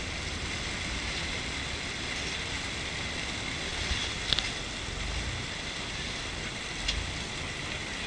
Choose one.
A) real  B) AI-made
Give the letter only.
A